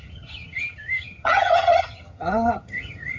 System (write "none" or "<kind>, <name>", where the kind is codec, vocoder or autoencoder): vocoder, HiFi-GAN